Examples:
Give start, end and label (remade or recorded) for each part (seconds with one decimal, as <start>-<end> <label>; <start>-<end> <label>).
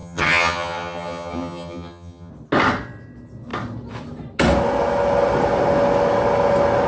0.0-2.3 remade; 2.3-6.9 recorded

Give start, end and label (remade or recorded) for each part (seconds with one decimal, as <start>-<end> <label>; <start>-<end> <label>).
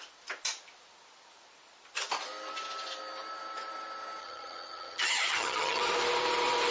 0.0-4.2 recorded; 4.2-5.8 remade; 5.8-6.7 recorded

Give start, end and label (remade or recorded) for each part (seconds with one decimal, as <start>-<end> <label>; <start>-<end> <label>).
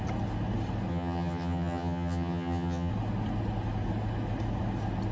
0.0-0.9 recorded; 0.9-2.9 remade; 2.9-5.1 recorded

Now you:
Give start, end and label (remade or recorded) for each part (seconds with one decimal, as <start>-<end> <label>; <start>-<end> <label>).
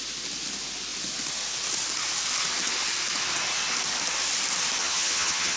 0.0-4.8 recorded; 4.8-5.6 remade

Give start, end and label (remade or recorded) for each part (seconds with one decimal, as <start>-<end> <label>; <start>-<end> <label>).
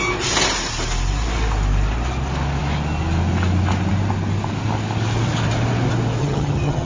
0.0-6.2 recorded; 6.2-6.9 remade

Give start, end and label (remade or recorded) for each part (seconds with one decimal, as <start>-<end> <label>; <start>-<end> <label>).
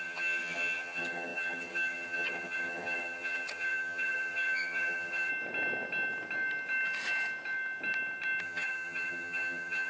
0.0-5.3 remade; 5.3-8.4 recorded; 8.4-9.9 remade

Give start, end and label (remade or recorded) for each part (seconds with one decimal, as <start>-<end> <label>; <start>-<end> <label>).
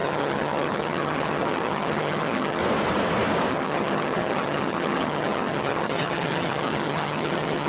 0.0-2.6 remade; 2.6-3.5 recorded; 3.5-7.7 remade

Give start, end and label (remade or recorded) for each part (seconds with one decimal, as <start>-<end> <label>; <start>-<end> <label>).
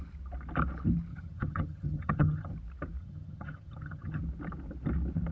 0.0-1.1 recorded; 1.1-2.5 remade; 2.5-3.0 recorded; 3.0-4.2 remade; 4.2-5.3 recorded